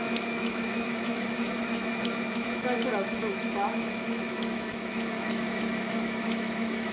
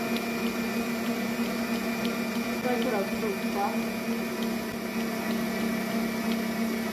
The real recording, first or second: second